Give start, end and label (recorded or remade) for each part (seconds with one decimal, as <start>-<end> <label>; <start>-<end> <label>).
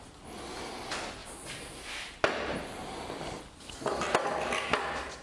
0.0-5.2 recorded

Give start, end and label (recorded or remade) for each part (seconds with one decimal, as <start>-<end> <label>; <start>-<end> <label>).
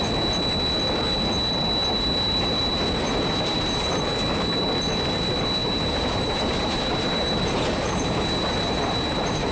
0.0-1.8 recorded; 1.8-4.0 remade; 4.0-5.6 recorded; 5.6-9.5 remade